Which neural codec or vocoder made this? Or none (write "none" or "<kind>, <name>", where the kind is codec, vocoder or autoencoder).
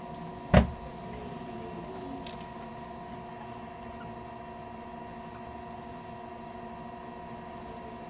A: none